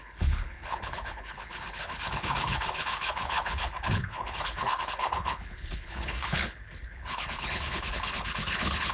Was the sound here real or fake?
fake